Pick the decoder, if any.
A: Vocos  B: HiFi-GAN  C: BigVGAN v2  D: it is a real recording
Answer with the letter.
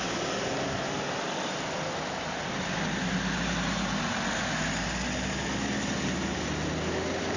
D